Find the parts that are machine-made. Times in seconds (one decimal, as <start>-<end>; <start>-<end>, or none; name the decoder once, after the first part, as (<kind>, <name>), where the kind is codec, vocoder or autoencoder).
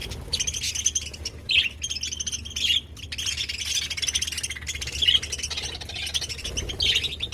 none